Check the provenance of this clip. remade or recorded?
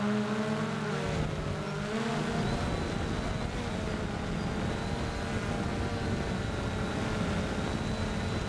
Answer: recorded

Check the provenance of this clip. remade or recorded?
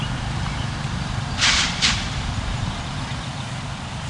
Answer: remade